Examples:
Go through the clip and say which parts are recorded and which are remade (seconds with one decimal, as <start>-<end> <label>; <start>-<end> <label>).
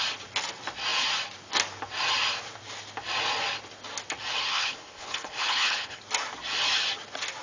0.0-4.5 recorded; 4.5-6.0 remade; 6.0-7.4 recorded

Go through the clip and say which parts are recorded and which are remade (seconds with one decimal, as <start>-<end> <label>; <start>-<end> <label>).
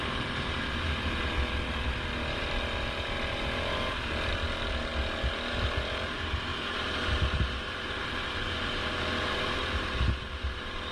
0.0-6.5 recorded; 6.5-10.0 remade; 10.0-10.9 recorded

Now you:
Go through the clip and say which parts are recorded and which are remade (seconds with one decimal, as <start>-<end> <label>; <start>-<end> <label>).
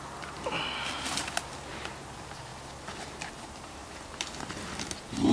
0.0-0.4 remade; 0.4-1.7 recorded; 1.7-2.5 remade; 2.5-3.0 recorded; 3.0-3.8 remade; 3.8-5.3 recorded